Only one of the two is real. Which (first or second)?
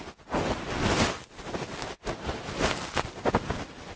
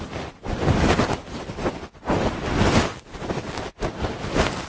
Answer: first